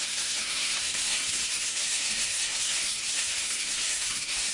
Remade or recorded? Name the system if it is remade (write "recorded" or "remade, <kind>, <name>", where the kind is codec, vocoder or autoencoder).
remade, codec, SNAC